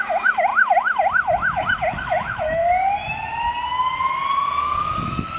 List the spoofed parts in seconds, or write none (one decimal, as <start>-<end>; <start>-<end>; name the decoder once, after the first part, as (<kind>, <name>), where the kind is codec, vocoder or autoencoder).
0.0-2.6 (autoencoder, DAC-VAE); 4.6-5.4